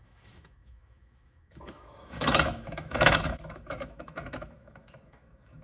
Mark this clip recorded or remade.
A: remade